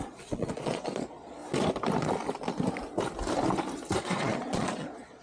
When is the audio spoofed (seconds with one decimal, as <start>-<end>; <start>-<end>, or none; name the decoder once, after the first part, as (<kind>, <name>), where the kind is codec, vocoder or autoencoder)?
0.0-1.4 (vocoder, Vocos); 4.0-5.2